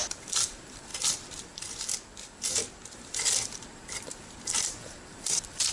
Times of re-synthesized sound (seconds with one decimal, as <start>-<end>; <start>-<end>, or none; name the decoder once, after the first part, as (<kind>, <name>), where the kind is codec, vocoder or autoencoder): 0.0-5.7 (vocoder, BigVGAN v2)